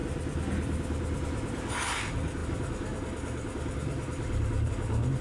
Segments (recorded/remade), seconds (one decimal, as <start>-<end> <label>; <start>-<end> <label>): 0.0-1.7 recorded; 1.7-5.2 remade